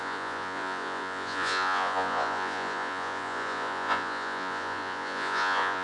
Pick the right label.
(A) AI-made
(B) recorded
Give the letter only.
A